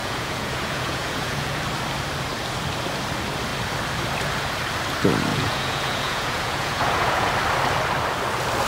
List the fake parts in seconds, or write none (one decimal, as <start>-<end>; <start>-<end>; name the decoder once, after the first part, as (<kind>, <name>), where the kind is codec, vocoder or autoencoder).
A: 0.0-1.6 (vocoder, Vocos); 5.3-7.3